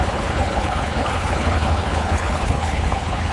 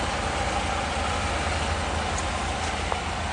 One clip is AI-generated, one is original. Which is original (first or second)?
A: second